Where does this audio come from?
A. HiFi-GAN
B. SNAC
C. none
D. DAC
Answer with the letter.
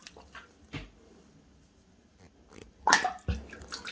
C